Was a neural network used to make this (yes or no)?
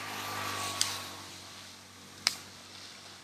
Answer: no